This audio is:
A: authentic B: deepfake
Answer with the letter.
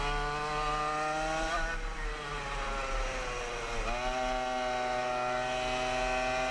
A